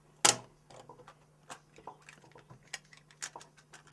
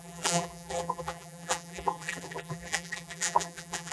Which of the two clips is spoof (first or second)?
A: second